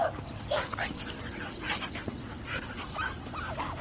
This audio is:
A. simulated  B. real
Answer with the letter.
B